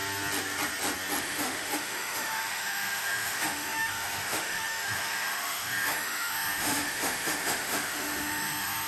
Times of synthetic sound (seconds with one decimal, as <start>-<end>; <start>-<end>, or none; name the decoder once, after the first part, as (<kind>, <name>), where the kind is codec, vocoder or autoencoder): 1.2-8.9 (autoencoder, DAC-VAE)